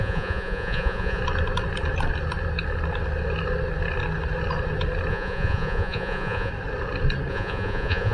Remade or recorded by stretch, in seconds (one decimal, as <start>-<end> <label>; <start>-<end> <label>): 0.0-1.2 remade; 1.2-5.1 recorded; 5.1-6.5 remade; 6.5-7.3 recorded; 7.3-8.1 remade

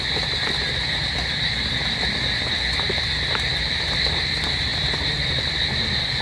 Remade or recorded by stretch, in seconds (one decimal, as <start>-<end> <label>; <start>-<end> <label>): 0.0-6.2 recorded